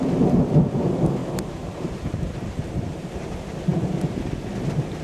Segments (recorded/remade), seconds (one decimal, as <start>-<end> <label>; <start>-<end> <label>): 0.0-5.0 recorded